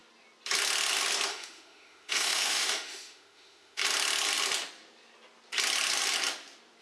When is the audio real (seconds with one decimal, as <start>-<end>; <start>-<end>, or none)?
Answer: 0.0-1.3; 3.8-6.8